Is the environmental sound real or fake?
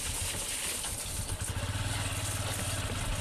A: real